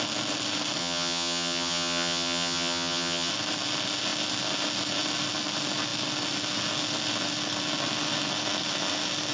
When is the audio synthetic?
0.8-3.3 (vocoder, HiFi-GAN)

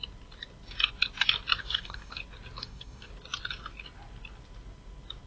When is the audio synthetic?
1.6-2.2 (codec, DAC); 2.6-3.1

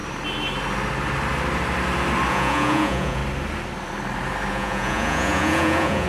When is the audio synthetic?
2.3-3.2 (vocoder, Vocos); 4.5-6.1

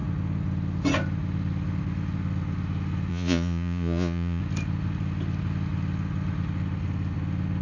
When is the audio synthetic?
3.1-4.4 (vocoder, Vocos)